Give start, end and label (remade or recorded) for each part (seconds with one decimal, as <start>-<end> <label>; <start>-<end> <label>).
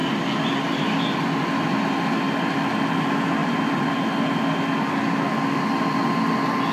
0.0-3.4 recorded; 3.4-3.9 remade; 3.9-6.7 recorded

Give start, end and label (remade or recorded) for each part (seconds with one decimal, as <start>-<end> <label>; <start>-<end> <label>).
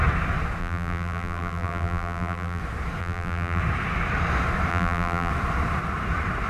0.0-0.6 recorded; 0.6-2.6 remade; 2.6-3.0 recorded; 3.0-3.6 remade; 3.6-4.7 recorded; 4.7-5.3 remade; 5.3-6.5 recorded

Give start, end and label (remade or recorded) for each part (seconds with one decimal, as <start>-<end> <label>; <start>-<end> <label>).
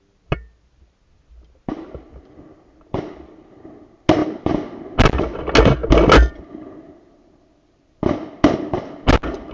0.0-9.5 recorded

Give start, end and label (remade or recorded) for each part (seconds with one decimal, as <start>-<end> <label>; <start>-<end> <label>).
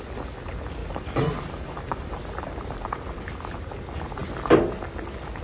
0.0-0.8 recorded; 0.8-3.2 remade; 3.2-5.4 recorded